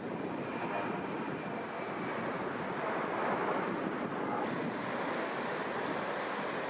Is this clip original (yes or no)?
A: yes